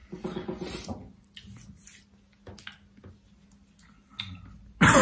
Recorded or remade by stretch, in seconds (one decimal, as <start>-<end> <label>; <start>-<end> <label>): 0.0-5.0 recorded